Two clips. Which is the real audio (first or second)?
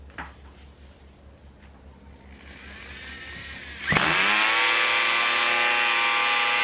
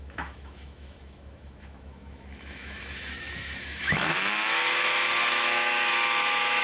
first